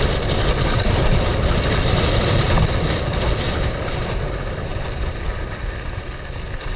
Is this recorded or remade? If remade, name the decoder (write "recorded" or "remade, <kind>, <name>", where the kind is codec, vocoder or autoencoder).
recorded